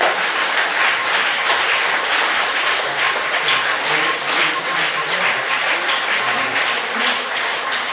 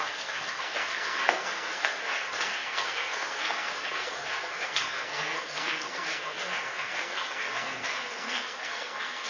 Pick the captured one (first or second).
first